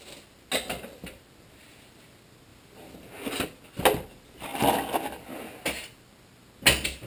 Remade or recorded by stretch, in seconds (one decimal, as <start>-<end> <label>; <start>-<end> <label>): 0.0-7.1 recorded